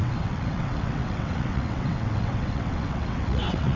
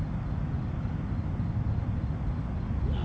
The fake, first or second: first